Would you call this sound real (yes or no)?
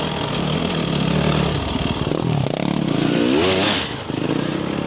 yes